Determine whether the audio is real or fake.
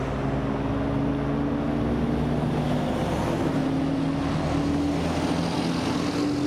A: real